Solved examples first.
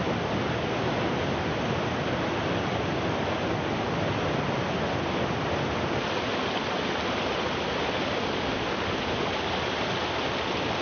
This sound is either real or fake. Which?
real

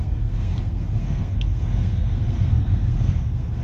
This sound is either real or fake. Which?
fake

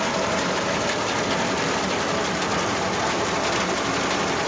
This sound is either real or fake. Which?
real